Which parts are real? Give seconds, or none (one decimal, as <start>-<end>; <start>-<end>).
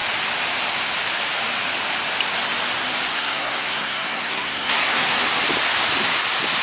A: 0.0-3.1; 5.1-6.6